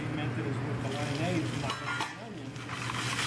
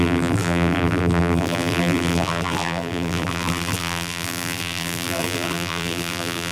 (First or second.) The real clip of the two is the first